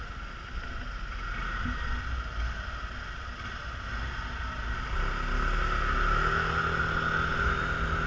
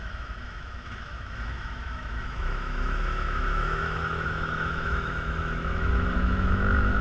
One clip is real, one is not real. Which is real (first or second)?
first